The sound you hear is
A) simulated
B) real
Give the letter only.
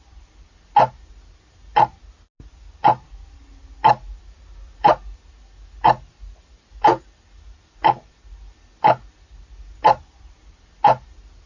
B